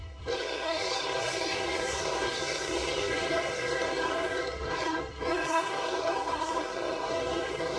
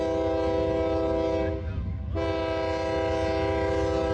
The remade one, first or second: first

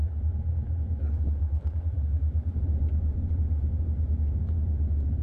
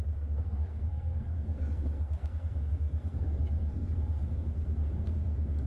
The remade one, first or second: second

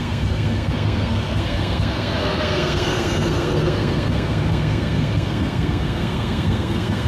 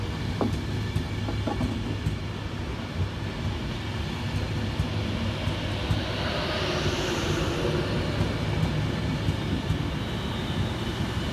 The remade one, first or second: first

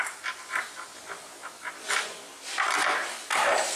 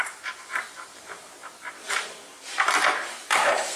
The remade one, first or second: second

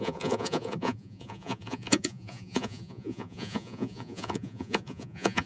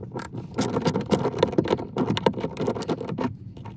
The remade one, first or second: first